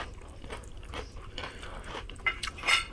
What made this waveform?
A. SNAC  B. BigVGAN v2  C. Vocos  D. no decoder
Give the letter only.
B